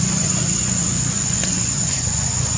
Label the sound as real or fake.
fake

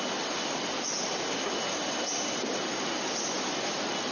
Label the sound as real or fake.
real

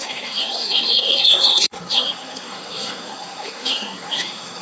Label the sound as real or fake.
fake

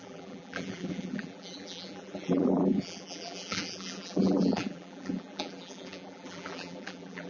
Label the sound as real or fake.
fake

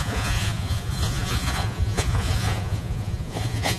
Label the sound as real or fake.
fake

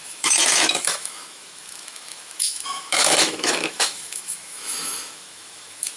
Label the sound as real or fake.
fake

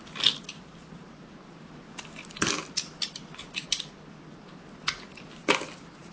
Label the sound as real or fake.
real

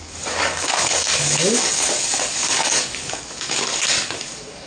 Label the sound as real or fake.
fake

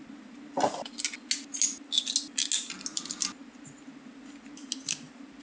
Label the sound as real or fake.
real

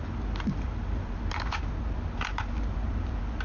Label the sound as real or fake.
real